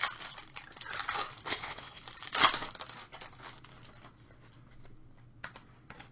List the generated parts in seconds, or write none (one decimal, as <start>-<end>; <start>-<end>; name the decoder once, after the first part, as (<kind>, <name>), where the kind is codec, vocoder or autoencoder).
1.5-2.0 (vocoder, WaveNeXt)